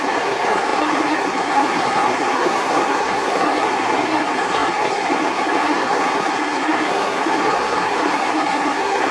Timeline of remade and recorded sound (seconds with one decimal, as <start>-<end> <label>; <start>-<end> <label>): 0.0-9.1 remade